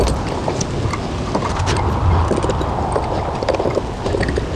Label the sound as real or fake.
real